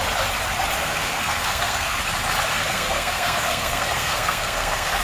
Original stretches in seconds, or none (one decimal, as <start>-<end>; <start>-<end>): 0.0-0.8; 2.0-2.5